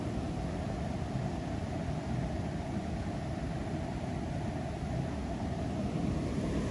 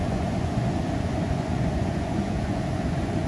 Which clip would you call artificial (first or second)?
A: second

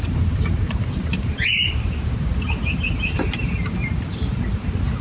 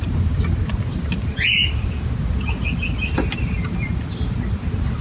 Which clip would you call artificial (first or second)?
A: first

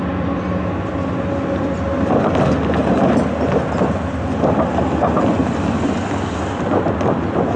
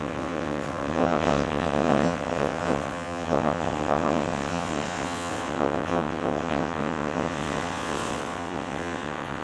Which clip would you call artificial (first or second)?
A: second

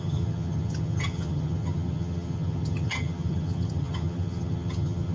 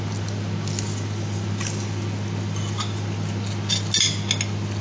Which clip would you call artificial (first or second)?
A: first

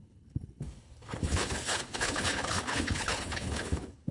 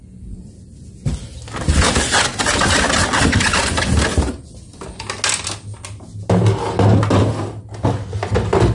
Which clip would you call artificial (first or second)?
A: first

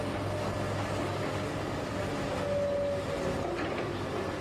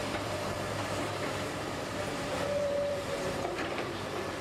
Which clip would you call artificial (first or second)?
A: second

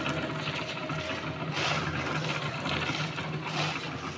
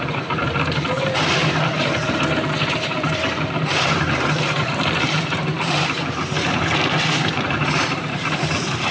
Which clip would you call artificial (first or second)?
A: second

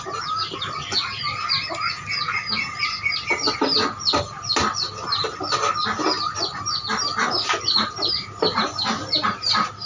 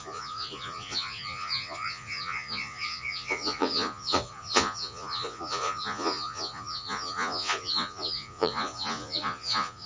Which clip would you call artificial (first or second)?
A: second